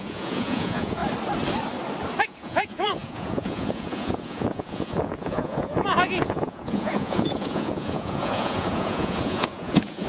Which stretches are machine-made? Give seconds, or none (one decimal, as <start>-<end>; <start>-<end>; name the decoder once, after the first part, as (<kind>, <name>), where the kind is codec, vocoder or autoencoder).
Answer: 0.0-1.0 (vocoder, Vocos); 2.2-10.1